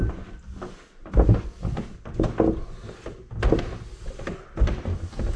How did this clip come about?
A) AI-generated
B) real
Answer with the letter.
B